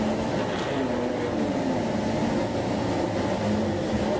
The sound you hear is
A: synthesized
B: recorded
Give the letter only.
B